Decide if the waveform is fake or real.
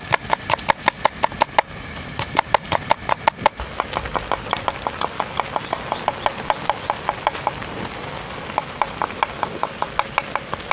real